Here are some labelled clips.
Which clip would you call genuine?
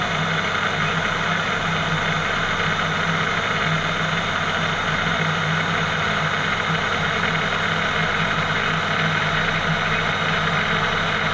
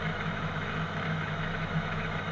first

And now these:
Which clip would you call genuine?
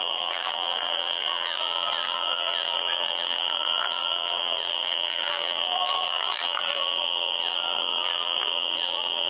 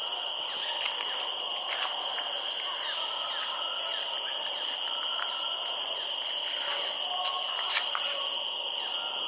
second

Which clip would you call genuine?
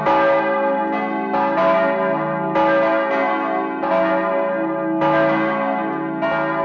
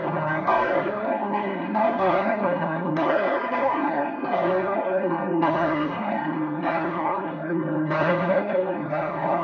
first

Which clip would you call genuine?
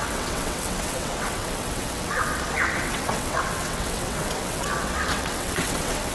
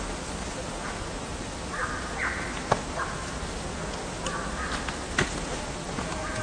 second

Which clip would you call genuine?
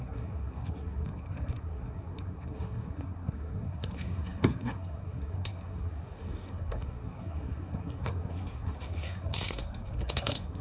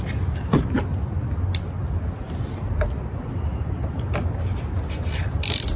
second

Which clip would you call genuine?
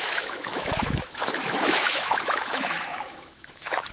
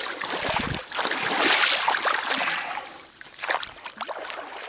second